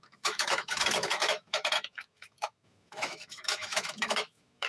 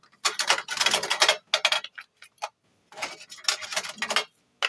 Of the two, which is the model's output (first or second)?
first